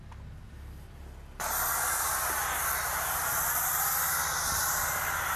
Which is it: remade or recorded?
recorded